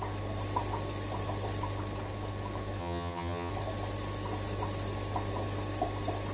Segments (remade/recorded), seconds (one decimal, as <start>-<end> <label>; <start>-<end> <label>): 0.0-2.8 recorded; 2.8-3.5 remade; 3.5-6.3 recorded